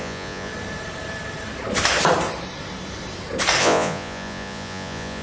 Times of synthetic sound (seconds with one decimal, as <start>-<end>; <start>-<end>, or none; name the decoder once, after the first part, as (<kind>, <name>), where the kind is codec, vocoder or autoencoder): 0.0-0.5 (vocoder, Vocos); 3.6-5.2